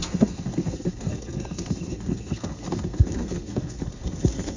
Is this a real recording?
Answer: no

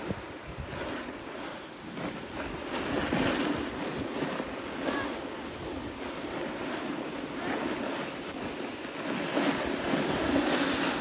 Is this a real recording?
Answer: yes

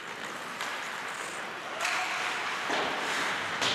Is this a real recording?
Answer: yes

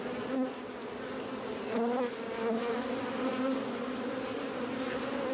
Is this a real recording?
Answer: yes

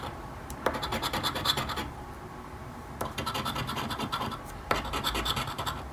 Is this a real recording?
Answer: no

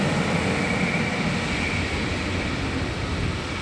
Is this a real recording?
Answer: yes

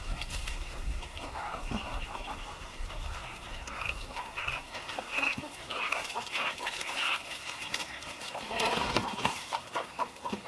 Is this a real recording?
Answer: no